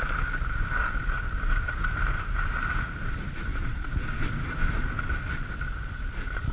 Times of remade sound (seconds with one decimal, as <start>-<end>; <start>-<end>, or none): 3.5-4.3